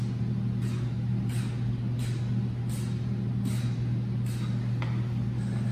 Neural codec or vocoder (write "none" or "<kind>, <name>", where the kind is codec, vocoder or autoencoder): none